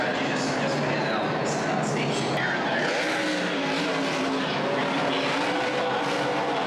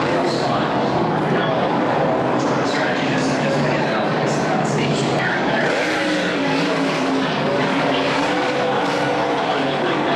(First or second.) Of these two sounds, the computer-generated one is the second